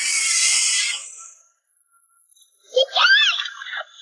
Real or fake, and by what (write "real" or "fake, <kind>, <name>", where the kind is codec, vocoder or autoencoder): fake, vocoder, BigVGAN v2